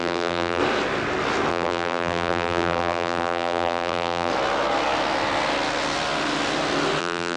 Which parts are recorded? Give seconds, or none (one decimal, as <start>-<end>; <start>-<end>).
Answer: 0.6-1.5; 4.3-7.0